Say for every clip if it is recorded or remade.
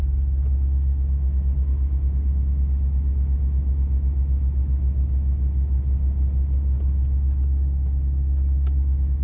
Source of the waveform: recorded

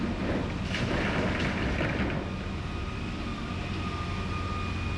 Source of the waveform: recorded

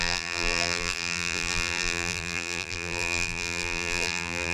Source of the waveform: remade